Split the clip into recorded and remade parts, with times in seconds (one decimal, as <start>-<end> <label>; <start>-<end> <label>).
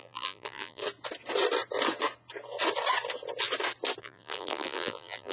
0.0-0.8 remade; 0.8-4.0 recorded; 4.0-5.3 remade